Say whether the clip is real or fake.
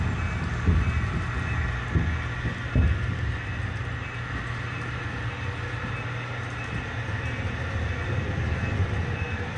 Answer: real